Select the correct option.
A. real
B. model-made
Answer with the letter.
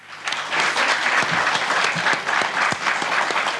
A